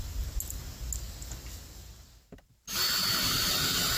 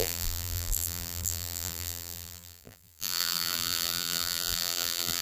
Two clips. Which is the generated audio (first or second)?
second